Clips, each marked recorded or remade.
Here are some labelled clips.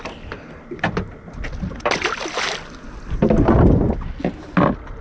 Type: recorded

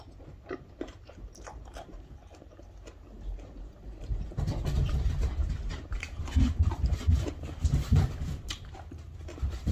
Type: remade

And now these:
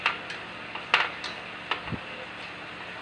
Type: recorded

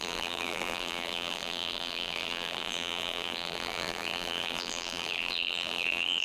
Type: remade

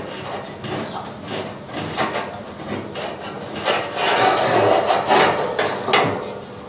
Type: recorded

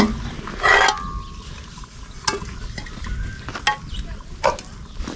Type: recorded